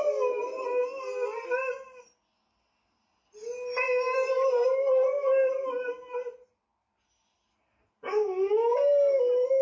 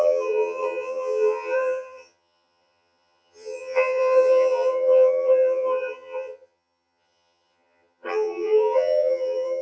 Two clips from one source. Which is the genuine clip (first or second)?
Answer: first